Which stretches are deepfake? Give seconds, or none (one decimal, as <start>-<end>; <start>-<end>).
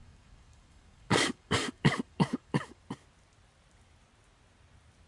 0.0-2.8